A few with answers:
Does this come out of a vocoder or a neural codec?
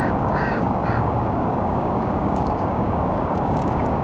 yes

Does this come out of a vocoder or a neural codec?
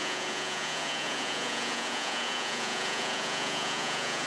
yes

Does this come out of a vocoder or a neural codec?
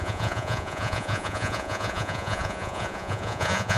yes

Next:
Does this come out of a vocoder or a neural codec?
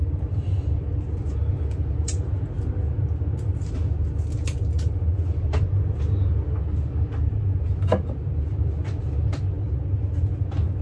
no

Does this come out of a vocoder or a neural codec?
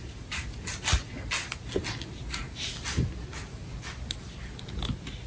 no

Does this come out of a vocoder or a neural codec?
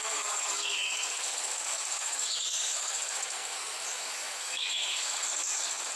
yes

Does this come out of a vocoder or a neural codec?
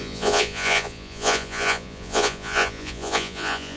yes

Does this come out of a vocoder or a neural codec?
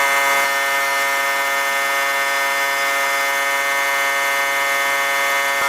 no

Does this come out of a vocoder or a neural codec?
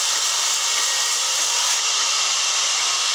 no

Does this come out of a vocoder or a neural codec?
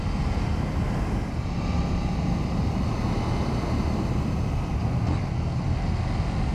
no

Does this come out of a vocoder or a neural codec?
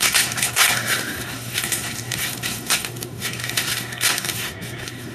yes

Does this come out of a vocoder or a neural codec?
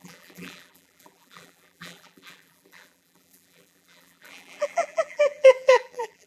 yes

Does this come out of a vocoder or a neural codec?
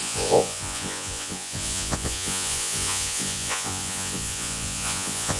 yes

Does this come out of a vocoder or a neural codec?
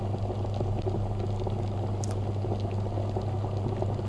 no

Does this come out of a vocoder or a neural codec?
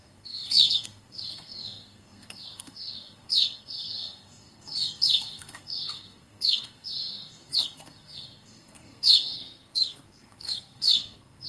yes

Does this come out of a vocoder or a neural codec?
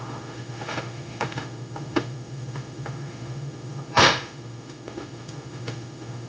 yes